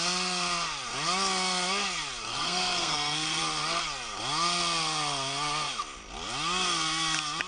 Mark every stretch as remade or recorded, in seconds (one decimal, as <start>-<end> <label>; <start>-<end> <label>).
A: 0.0-2.3 recorded; 2.3-3.4 remade; 3.4-7.5 recorded